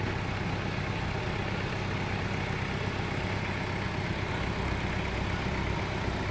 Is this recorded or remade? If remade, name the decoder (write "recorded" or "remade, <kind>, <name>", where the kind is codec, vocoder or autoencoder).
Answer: recorded